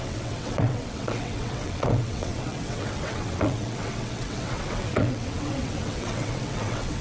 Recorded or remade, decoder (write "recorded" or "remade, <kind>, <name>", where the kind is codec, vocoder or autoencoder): remade, vocoder, WaveNeXt